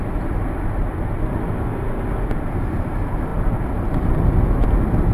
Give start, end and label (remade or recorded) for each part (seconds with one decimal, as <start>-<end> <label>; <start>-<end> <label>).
0.0-0.8 recorded; 0.8-1.5 remade; 1.5-3.3 recorded; 3.3-4.1 remade; 4.1-5.1 recorded